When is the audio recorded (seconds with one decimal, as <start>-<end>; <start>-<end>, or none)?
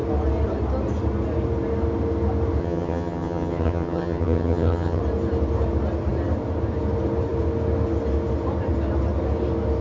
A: 0.0-2.6; 5.0-9.8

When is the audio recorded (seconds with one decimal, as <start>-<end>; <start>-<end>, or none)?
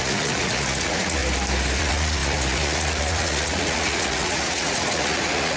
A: 1.2-1.8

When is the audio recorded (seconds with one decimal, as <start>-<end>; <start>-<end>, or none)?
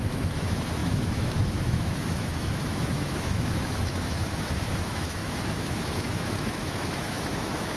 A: none